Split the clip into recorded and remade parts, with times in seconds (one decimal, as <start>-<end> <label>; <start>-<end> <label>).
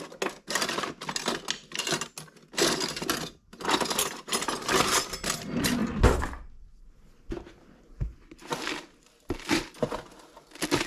0.0-10.9 recorded